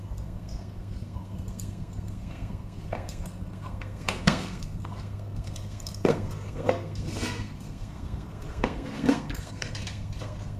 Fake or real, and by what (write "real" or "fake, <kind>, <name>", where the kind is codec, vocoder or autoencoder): fake, codec, SNAC